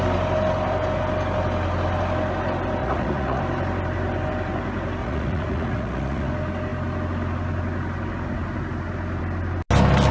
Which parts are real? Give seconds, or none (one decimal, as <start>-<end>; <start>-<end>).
0.0-2.8; 3.4-5.0; 6.3-10.1